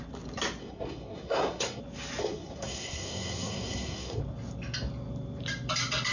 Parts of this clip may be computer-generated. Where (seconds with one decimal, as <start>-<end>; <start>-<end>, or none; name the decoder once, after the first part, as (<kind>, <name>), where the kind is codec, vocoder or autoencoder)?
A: 0.6-1.8 (codec, SNAC); 2.2-4.2